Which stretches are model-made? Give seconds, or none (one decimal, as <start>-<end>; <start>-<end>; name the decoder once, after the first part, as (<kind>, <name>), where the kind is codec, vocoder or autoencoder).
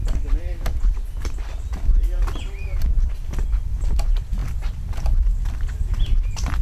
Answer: none